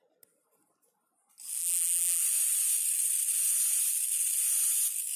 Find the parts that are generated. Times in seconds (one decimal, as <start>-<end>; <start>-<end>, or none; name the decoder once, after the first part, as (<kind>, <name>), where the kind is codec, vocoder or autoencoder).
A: 1.6-2.2 (vocoder, BigVGAN v2)